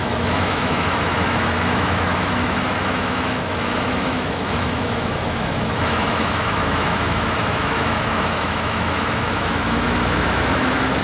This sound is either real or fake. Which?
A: fake